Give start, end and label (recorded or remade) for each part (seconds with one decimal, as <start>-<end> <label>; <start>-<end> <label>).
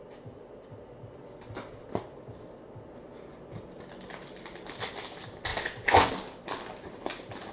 0.0-5.5 recorded; 5.5-6.1 remade; 6.1-7.5 recorded